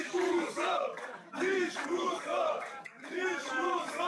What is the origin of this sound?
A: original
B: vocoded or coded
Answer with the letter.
B